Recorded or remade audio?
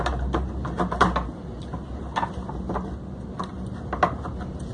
recorded